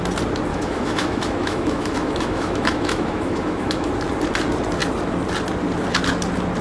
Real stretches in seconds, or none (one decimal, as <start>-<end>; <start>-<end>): 0.0-0.5; 3.9-6.6